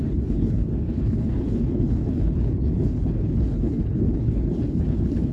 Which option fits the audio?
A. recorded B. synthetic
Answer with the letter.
B